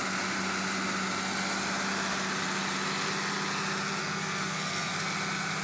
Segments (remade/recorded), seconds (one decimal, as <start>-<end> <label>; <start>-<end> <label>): 0.0-4.0 recorded; 4.0-4.9 remade; 4.9-5.6 recorded